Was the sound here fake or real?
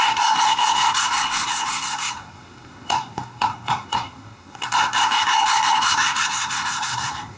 fake